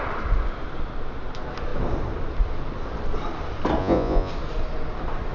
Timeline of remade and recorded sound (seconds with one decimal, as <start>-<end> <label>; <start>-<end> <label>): 0.0-3.8 recorded; 3.8-4.3 remade; 4.3-5.3 recorded